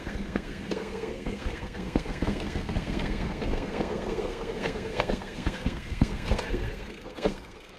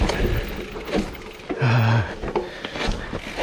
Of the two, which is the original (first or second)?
second